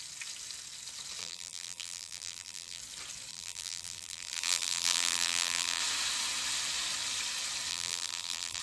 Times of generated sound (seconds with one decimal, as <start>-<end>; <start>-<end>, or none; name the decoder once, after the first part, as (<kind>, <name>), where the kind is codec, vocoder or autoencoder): 1.2-2.8 (vocoder, BigVGAN v2); 3.3-5.8; 7.7-8.6